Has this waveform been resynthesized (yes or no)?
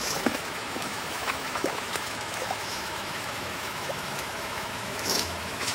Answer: yes